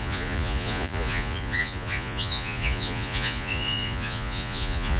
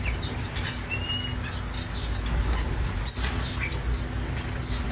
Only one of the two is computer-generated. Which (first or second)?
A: first